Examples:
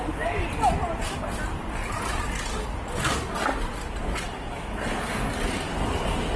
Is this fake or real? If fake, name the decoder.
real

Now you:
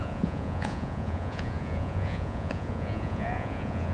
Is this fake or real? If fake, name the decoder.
fake, vocoder, Vocos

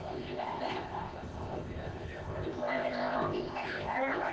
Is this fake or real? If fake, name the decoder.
fake, codec, ZipCodec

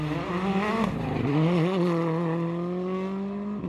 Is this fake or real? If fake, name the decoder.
real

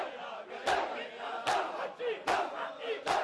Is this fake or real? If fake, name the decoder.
real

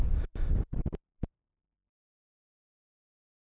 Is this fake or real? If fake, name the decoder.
real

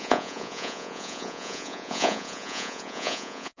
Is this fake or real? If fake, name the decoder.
fake, vocoder, Vocos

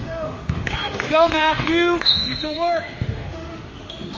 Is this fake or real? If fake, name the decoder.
fake, autoencoder, DAC-VAE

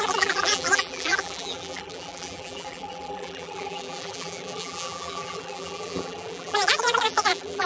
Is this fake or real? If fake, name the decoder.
fake, vocoder, BigVGAN v2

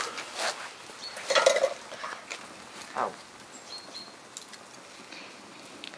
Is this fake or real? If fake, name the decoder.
real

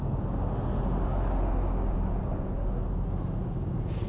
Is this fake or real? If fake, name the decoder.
real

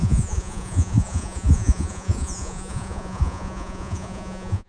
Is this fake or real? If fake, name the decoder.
fake, vocoder, Vocos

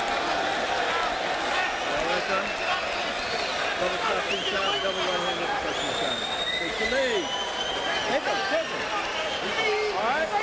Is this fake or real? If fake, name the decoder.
real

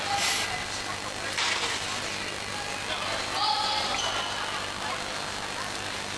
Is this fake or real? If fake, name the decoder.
real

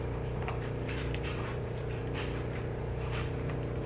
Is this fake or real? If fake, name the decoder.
fake, vocoder, BigVGAN v2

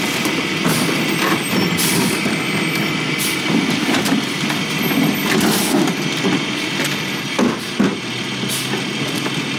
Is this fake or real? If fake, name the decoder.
real